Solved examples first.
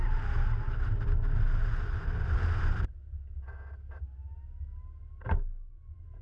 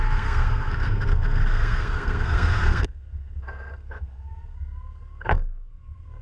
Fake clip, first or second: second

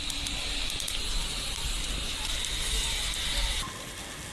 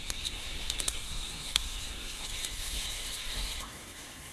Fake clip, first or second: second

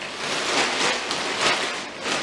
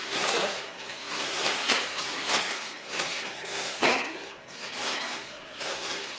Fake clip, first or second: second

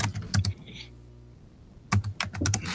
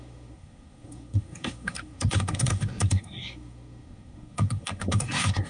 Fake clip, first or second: second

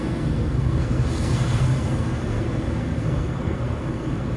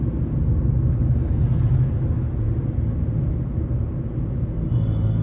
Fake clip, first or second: first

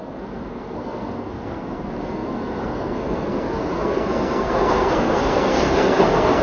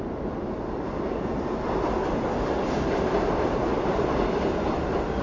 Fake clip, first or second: first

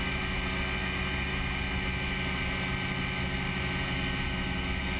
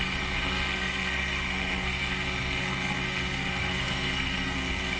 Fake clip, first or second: second